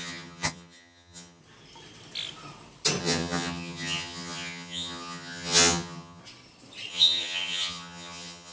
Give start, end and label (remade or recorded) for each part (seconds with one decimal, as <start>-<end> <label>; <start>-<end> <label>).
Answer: 0.0-1.4 remade; 1.4-3.0 recorded; 3.0-6.2 remade; 6.2-6.9 recorded; 6.9-8.5 remade